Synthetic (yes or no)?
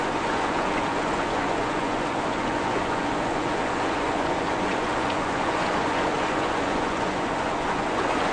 yes